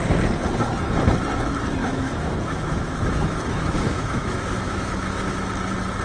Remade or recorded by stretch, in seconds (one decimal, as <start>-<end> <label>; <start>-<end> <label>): 0.0-1.8 recorded; 1.8-5.4 remade; 5.4-6.0 recorded